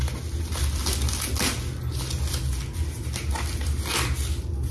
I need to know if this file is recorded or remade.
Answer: recorded